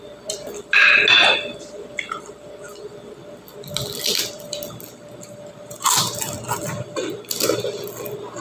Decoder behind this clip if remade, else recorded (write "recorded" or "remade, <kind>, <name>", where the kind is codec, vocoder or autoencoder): recorded